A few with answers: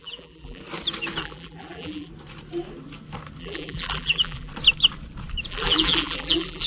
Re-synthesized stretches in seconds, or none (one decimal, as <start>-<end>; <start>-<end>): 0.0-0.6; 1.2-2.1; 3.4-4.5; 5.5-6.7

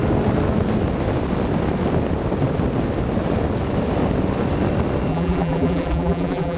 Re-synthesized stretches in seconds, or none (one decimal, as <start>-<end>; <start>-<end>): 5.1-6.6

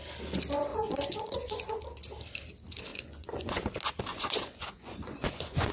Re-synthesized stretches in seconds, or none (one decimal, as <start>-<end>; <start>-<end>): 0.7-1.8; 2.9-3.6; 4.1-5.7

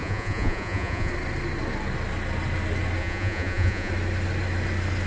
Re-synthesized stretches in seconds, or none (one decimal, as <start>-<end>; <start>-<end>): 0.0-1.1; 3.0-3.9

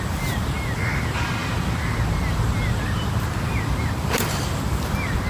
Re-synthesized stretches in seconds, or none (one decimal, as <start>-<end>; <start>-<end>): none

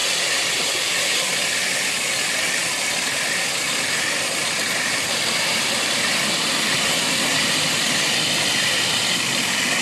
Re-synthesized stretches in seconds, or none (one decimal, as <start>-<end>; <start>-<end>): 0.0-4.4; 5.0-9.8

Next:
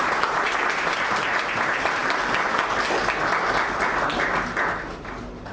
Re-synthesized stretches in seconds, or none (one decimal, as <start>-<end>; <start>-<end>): 0.0-2.0